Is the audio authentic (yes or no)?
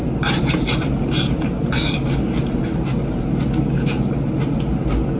yes